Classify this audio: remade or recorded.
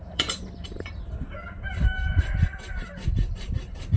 remade